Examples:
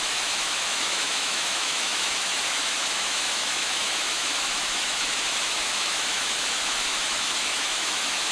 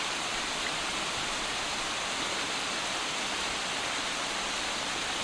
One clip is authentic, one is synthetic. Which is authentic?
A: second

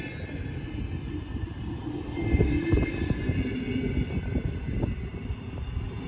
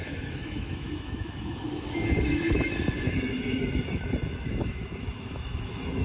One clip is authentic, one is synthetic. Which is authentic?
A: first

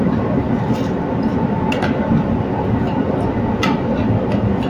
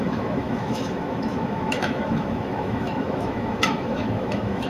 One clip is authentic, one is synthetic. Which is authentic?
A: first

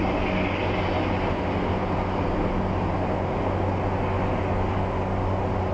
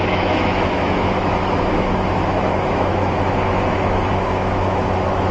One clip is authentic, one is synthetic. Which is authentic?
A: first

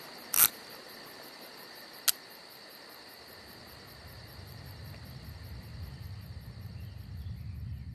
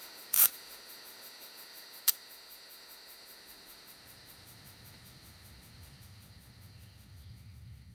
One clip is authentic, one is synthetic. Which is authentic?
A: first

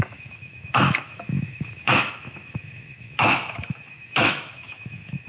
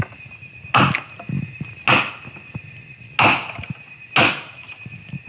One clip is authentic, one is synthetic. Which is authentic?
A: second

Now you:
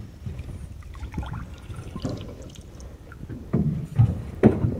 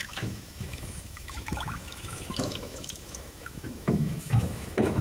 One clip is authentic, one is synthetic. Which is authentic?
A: first